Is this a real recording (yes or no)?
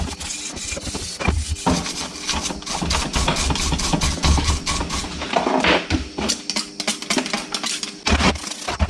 yes